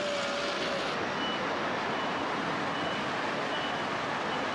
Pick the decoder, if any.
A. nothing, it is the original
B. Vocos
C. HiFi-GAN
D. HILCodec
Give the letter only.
A